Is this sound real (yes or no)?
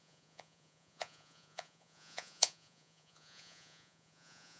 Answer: no